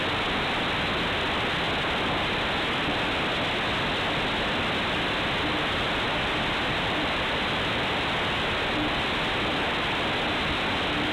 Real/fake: real